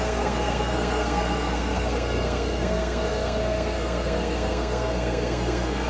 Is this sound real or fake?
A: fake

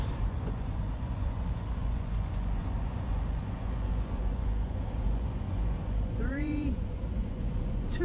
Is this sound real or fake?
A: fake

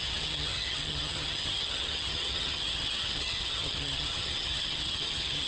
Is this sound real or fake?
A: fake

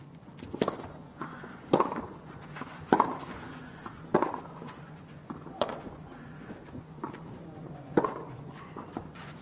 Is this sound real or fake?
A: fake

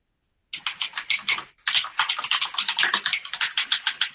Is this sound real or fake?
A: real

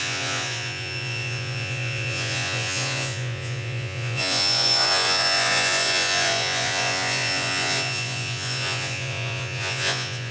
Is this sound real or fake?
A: fake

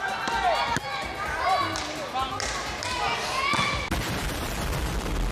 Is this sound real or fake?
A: real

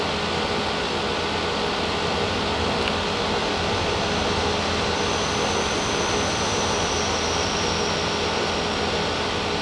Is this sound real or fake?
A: real